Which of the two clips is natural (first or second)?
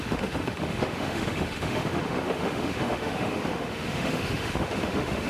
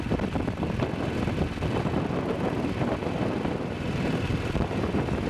second